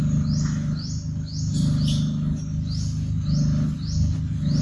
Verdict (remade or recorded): recorded